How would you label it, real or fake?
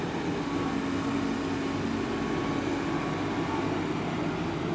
real